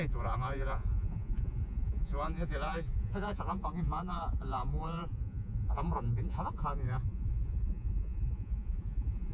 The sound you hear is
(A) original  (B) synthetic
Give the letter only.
B